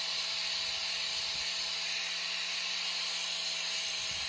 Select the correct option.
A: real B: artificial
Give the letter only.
A